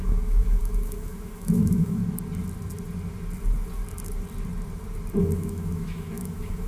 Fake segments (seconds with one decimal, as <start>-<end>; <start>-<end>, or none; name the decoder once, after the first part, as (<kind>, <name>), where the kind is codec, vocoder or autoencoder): 0.0-2.0 (autoencoder, DAC-VAE); 5.2-6.7